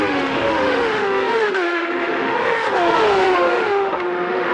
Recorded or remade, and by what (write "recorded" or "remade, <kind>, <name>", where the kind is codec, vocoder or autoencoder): remade, autoencoder, DAC-VAE